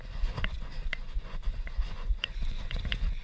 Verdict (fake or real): fake